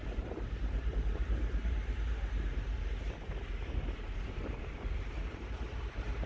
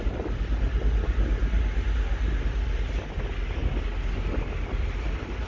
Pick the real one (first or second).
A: second